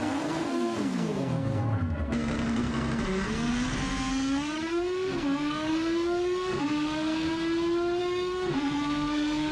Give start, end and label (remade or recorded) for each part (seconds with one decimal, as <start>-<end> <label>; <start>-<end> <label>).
0.0-7.3 remade; 7.3-8.0 recorded; 8.0-9.5 remade